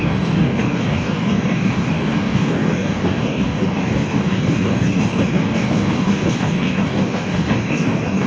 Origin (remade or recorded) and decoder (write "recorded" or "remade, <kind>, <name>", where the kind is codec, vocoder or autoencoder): remade, codec, DAC